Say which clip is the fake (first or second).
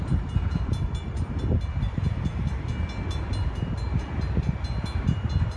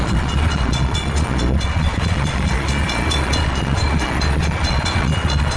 second